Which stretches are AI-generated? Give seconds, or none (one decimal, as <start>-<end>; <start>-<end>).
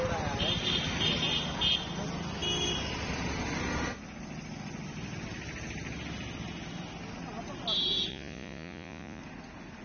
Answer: 8.1-9.2